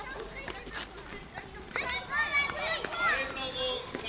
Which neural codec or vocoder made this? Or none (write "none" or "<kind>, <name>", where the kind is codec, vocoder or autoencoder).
none